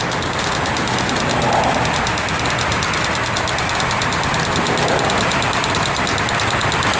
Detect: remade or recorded recorded